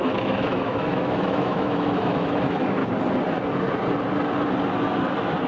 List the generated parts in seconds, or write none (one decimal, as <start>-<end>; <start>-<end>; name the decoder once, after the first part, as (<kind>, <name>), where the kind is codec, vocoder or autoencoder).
0.0-2.8 (autoencoder, DAC-VAE)

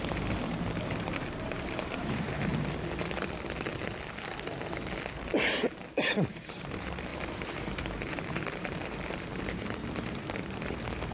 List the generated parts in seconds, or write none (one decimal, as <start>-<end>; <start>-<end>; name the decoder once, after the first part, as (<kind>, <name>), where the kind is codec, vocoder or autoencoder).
0.0-2.5 (vocoder, BigVGAN v2); 5.2-11.1